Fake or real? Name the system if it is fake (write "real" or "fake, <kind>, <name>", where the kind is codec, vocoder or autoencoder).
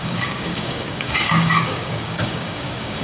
fake, codec, DAC